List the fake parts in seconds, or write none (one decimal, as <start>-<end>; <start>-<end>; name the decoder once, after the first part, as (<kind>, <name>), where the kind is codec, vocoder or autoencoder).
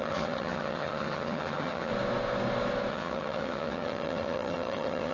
0.0-1.9 (vocoder, HiFi-GAN); 2.9-5.1